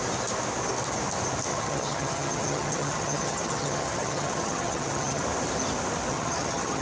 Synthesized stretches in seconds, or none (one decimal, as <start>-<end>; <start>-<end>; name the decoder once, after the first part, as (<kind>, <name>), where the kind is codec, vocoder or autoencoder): 1.5-5.2 (vocoder, HiFi-GAN); 6.1-6.8